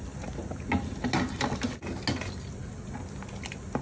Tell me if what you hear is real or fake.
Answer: real